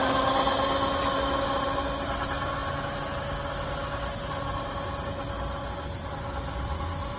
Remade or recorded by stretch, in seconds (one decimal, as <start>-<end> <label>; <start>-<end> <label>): 0.0-7.2 recorded